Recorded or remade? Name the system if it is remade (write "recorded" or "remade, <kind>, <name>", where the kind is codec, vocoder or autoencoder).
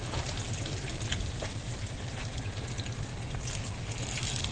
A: recorded